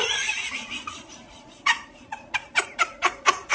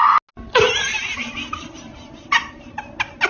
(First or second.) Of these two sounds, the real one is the second